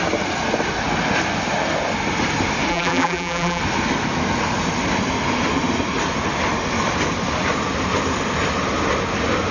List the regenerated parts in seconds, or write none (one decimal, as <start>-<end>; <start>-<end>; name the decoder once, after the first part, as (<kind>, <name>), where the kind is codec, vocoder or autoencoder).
2.7-3.6 (vocoder, BigVGAN v2)